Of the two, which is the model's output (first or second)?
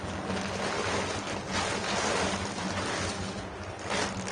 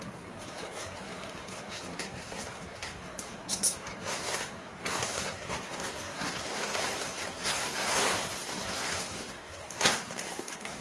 second